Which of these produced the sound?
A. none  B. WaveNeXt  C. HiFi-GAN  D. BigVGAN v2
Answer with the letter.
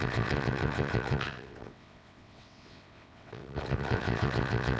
B